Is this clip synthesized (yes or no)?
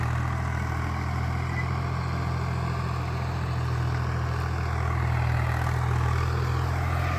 no